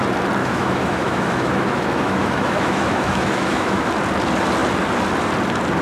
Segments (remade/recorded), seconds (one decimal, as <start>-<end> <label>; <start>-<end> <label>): 0.0-0.4 recorded; 0.4-3.9 remade; 3.9-5.8 recorded